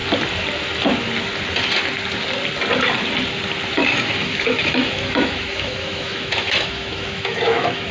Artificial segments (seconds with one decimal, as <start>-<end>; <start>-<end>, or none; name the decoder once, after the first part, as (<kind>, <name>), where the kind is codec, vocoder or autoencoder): 3.8-7.9 (autoencoder, DAC-VAE)